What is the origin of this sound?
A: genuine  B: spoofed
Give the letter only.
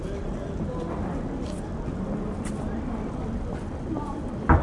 A